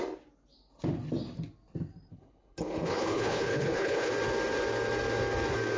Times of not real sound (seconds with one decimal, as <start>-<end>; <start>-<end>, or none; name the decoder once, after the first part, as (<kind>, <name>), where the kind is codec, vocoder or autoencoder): 2.1-4.1 (codec, HILCodec)